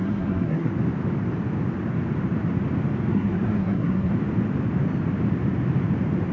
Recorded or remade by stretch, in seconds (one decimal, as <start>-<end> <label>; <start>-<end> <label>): 0.0-0.7 remade; 0.7-3.1 recorded; 3.1-4.1 remade; 4.1-6.3 recorded

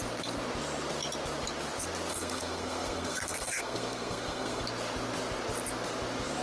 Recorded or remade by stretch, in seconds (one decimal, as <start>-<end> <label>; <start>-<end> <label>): 0.0-2.1 recorded; 2.1-4.6 remade; 4.6-6.4 recorded

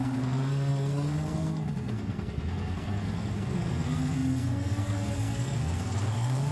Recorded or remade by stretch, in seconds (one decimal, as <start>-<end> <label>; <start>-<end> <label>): 0.0-6.5 remade

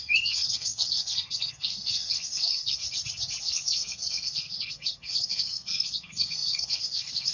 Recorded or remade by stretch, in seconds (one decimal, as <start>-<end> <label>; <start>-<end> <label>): 0.0-2.8 remade; 2.8-3.4 recorded; 3.4-7.3 remade